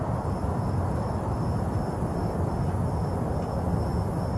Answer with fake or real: real